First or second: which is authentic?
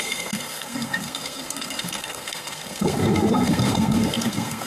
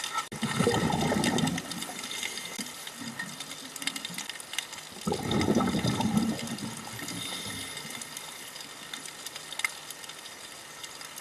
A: second